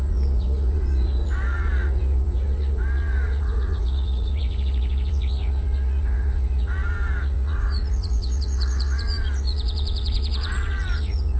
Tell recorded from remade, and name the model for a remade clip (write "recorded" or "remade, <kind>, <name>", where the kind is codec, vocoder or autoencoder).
remade, vocoder, Vocos